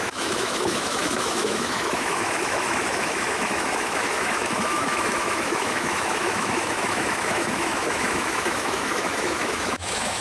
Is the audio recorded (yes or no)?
no